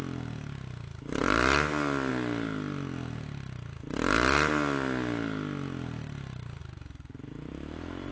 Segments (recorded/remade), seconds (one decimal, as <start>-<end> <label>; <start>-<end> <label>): 0.0-1.2 recorded; 1.2-2.1 remade; 2.1-6.6 recorded; 6.6-8.1 remade

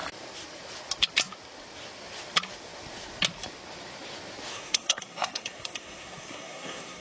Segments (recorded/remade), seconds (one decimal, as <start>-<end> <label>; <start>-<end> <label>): 0.0-4.5 recorded; 4.5-7.0 remade

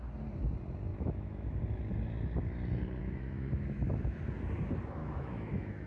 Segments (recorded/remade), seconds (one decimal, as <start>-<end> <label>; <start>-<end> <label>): 0.0-0.9 recorded; 0.9-1.6 remade; 1.6-3.0 recorded; 3.0-4.2 remade; 4.2-5.0 recorded; 5.0-5.9 remade

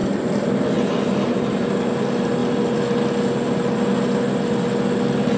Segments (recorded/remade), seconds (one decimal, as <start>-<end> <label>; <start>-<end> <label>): 0.0-5.4 recorded

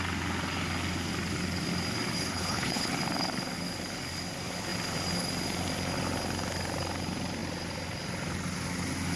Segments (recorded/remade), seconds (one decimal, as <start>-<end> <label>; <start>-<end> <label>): 0.0-2.3 recorded; 2.3-2.9 remade; 2.9-9.2 recorded